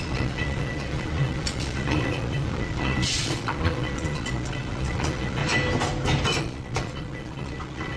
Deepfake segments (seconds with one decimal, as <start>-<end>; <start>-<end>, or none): 0.0-5.4; 6.4-8.0